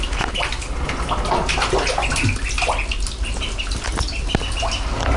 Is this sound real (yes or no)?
yes